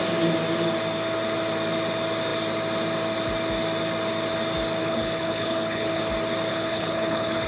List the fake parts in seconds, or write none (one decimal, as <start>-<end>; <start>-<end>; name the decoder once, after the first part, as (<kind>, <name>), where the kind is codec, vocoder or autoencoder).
4.8-6.0 (codec, HILCodec); 6.5-7.5